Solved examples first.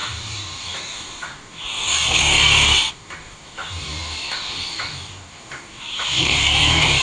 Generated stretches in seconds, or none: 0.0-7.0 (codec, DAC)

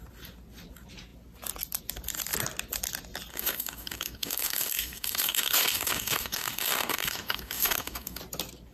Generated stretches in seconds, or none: 3.3-8.2 (codec, DAC)

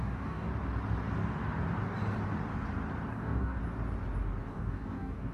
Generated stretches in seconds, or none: 0.0-0.5 (codec, DAC); 3.1-3.6; 4.5-5.3

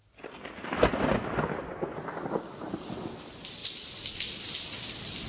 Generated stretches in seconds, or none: none

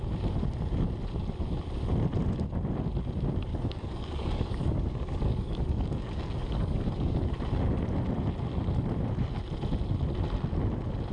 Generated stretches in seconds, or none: 3.5-7.2 (codec, DAC)

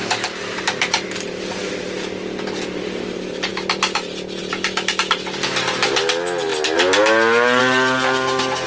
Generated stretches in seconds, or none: none

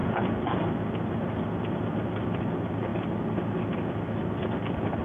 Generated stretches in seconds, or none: none

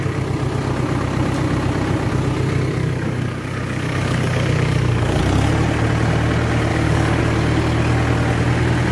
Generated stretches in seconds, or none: 2.8-5.2 (codec, DAC); 6.7-7.2